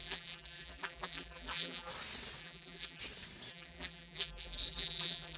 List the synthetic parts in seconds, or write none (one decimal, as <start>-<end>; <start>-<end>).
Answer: 0.0-1.9; 2.4-3.0; 3.5-5.4